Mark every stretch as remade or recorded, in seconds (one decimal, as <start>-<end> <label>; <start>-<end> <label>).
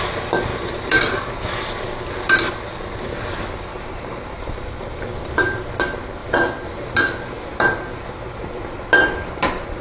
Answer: 0.0-0.5 recorded; 0.5-1.0 remade; 1.0-3.7 recorded; 3.7-5.1 remade; 5.1-9.8 recorded